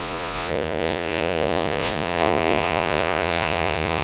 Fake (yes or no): yes